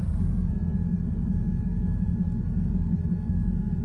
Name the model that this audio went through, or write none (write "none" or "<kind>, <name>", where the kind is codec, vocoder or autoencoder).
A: codec, SNAC